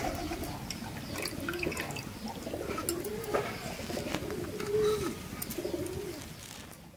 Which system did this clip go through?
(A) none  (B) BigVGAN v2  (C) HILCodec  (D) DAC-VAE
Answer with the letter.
A